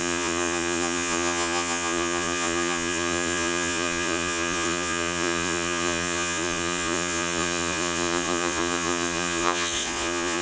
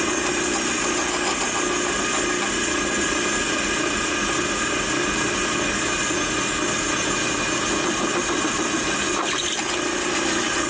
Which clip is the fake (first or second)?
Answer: first